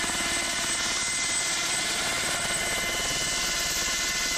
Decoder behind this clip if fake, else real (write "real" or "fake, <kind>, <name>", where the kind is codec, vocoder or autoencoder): real